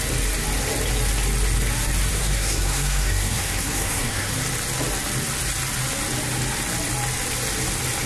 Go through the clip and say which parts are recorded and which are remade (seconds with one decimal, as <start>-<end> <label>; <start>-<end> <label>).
0.0-2.1 recorded; 2.1-4.3 remade; 4.3-8.1 recorded